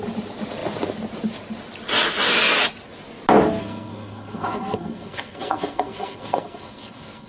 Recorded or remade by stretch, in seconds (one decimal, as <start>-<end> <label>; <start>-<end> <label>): 0.0-3.6 recorded; 3.6-7.3 remade